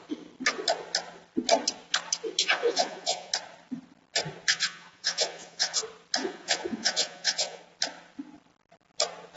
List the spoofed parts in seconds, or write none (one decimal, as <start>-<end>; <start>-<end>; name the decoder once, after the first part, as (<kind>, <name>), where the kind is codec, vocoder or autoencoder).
2.4-3.3 (vocoder, Vocos); 4.5-5.8; 6.2-7.6